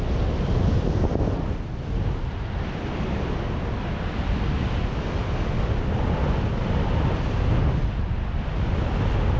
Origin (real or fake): real